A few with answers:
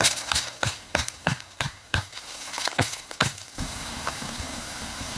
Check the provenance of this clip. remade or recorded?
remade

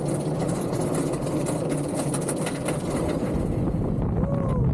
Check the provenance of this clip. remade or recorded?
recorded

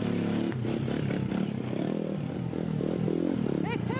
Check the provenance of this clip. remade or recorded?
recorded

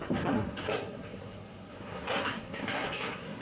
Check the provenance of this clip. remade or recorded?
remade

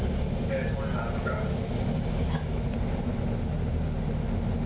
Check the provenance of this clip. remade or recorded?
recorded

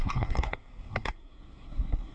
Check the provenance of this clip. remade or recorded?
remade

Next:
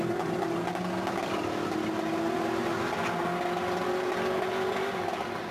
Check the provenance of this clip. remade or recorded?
recorded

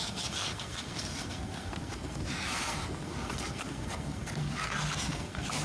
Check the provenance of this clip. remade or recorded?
remade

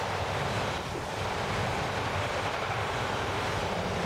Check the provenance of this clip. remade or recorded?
recorded